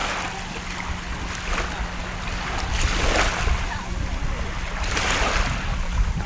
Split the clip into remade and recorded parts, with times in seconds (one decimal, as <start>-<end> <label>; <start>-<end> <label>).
0.0-6.3 recorded